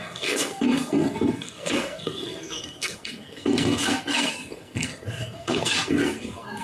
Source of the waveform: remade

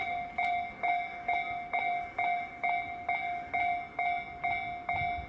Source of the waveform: recorded